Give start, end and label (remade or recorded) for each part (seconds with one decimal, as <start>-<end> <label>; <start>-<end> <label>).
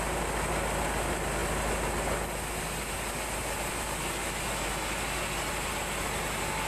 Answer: 0.0-6.7 recorded